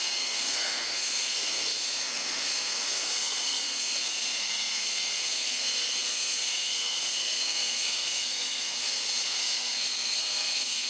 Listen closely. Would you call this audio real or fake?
fake